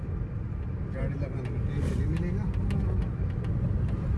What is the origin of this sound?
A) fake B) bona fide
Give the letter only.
B